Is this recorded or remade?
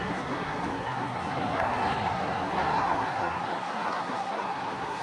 remade